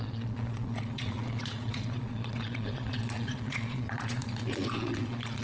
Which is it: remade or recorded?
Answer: remade